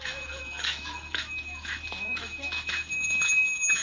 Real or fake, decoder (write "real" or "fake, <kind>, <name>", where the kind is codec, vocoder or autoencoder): fake, autoencoder, DAC-VAE